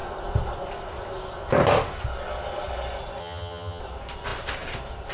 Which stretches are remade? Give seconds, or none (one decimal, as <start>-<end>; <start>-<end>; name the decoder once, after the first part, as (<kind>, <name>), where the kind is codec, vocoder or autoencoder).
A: 3.2-3.8 (vocoder, HiFi-GAN)